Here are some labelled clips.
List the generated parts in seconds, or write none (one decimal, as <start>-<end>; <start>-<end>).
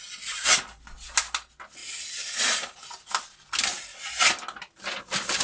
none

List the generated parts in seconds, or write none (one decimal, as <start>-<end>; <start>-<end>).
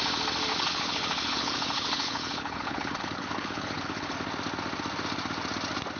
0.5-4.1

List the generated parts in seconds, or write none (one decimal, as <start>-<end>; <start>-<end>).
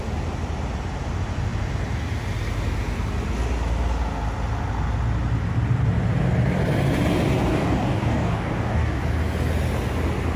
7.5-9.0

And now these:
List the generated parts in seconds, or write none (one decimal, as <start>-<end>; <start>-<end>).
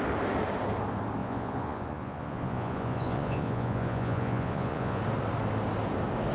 1.2-5.0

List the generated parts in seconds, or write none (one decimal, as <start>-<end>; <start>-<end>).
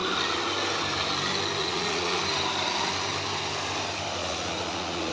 1.6-2.2; 4.2-5.1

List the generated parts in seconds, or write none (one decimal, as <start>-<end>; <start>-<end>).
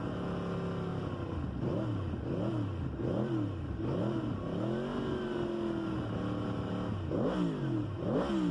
none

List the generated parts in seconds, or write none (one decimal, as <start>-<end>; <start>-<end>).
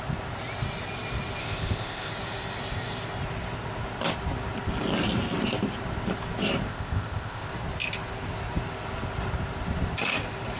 1.4-2.1; 6.7-7.5